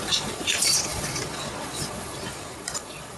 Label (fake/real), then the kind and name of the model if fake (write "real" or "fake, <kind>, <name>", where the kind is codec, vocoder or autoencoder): fake, vocoder, Vocos